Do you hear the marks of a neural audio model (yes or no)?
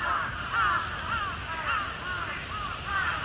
no